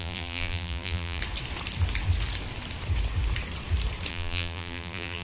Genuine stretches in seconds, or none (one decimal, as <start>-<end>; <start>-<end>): 1.2-4.1